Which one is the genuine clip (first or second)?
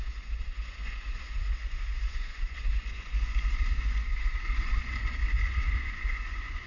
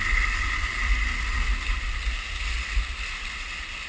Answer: second